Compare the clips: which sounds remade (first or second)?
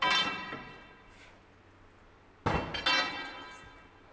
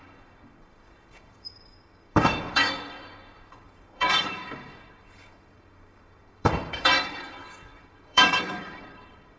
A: second